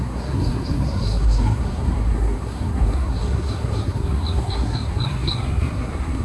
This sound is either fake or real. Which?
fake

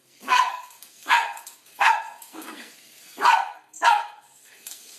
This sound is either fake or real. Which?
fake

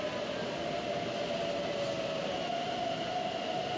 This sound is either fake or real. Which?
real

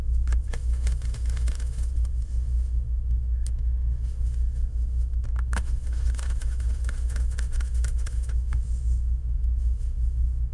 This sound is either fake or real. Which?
fake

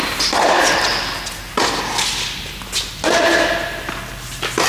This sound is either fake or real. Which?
real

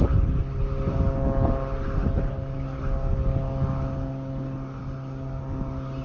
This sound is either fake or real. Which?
real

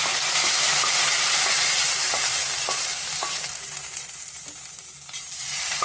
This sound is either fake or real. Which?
fake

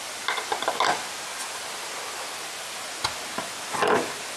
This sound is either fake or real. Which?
real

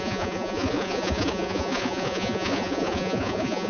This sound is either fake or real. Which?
fake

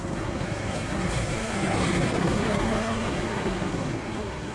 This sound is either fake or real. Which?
fake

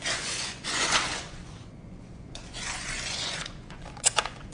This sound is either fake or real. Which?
fake